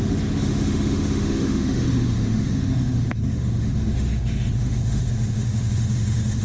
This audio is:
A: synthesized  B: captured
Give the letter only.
A